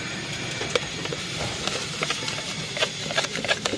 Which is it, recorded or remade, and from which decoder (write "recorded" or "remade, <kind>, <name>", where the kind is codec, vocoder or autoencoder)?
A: remade, vocoder, BigVGAN v2